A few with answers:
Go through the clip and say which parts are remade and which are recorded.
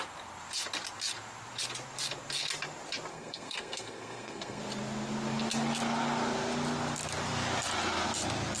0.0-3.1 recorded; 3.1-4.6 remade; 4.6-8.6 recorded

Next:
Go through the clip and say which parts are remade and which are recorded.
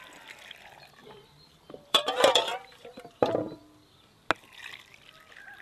0.0-1.0 recorded; 1.0-3.6 remade; 3.6-5.6 recorded